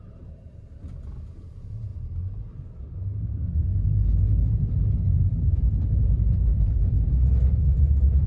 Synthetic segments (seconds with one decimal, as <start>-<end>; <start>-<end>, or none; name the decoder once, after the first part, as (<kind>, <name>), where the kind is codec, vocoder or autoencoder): 0.0-1.9 (vocoder, BigVGAN v2); 5.2-8.3